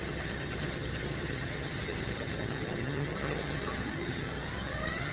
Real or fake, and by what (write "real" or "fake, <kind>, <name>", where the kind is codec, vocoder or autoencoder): fake, vocoder, HiFi-GAN